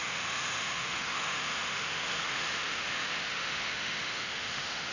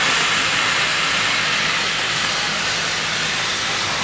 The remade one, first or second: first